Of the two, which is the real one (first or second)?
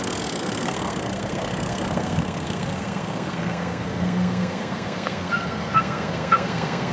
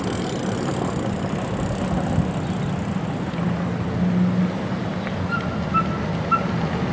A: second